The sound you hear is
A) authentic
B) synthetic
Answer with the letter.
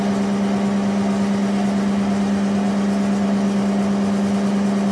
A